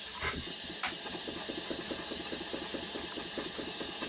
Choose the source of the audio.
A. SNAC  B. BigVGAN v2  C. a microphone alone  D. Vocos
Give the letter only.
C